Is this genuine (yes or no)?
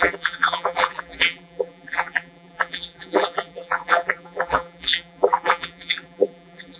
no